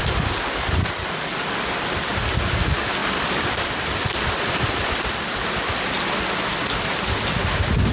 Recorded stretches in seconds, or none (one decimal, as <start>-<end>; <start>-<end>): 0.0-3.0; 5.6-7.9